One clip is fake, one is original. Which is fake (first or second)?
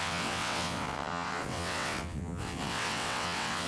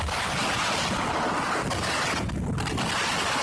first